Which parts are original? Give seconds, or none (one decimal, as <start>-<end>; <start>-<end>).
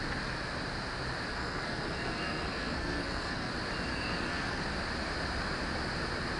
0.0-1.3; 3.5-3.9; 4.6-6.4